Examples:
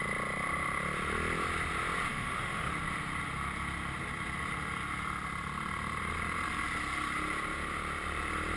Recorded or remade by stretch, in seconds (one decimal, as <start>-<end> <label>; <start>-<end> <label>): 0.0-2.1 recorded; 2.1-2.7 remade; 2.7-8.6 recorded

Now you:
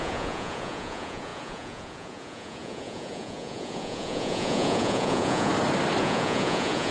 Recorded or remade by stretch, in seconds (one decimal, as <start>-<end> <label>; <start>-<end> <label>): 0.0-5.5 remade; 5.5-6.0 recorded; 6.0-6.9 remade

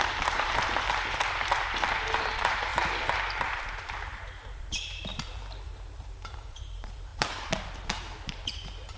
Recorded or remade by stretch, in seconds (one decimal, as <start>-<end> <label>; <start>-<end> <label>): 0.0-2.7 remade; 2.7-3.5 recorded; 3.5-5.1 remade; 5.1-5.7 recorded; 5.7-9.0 remade

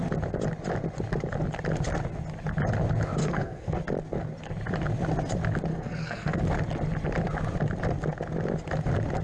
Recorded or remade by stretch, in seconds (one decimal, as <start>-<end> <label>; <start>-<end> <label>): 0.0-3.2 recorded; 3.2-3.8 remade; 3.8-5.7 recorded; 5.7-6.4 remade; 6.4-9.2 recorded